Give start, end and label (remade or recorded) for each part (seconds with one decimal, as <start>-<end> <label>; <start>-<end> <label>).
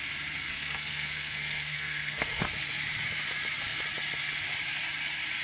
0.0-0.4 recorded; 0.4-2.4 remade; 2.4-5.4 recorded